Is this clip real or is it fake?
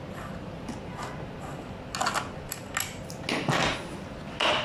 real